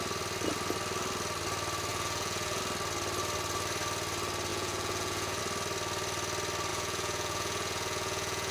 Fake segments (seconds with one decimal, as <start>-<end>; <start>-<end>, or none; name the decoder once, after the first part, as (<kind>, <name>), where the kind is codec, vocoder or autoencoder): 1.9-2.6 (vocoder, Vocos); 4.5-5.4; 6.7-8.5